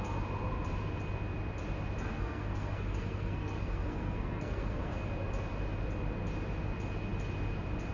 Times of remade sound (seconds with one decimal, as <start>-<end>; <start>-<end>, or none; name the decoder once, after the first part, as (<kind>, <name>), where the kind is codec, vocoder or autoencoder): 2.1-5.1 (codec, SNAC)